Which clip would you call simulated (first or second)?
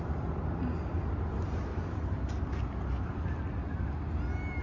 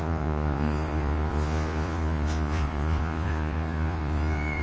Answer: second